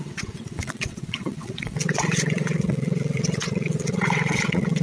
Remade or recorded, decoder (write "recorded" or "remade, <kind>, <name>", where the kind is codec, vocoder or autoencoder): remade, vocoder, WaveNeXt